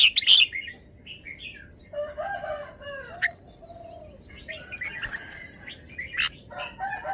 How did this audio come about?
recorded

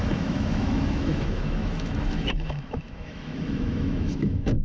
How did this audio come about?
remade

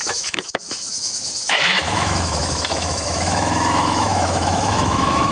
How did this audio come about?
remade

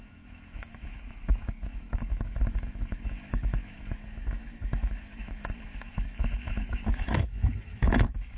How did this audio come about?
remade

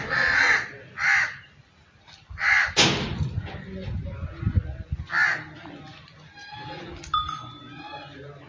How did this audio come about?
recorded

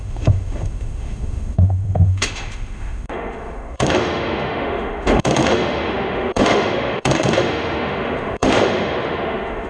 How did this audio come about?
remade